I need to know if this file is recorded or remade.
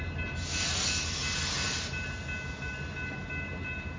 recorded